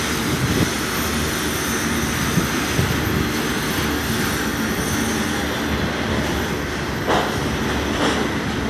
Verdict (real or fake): real